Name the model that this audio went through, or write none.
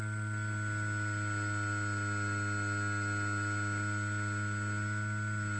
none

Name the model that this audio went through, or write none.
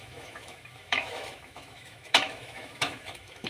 autoencoder, DAC-VAE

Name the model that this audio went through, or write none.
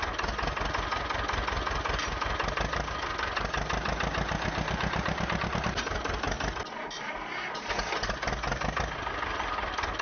none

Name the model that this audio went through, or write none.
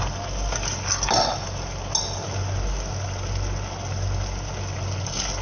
none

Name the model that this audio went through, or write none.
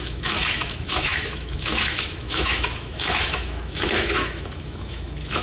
autoencoder, DAC-VAE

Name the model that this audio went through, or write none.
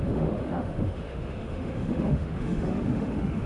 autoencoder, DAC-VAE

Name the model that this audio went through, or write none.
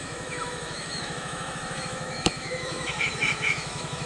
autoencoder, DAC-VAE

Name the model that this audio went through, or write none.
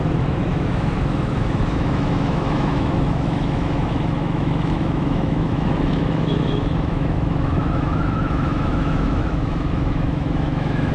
autoencoder, DAC-VAE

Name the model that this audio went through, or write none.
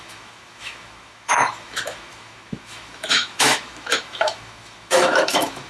autoencoder, DAC-VAE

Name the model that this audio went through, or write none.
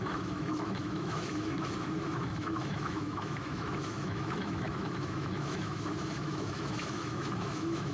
autoencoder, DAC-VAE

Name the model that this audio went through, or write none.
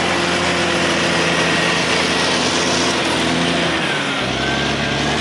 none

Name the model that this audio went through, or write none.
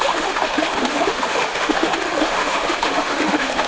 autoencoder, DAC-VAE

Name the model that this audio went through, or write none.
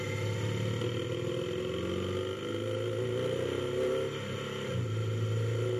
none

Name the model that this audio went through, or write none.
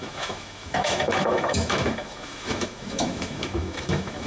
autoencoder, DAC-VAE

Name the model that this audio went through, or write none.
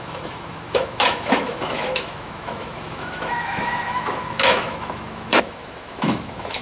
autoencoder, DAC-VAE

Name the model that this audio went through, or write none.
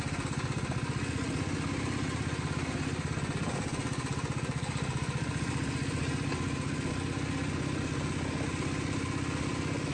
none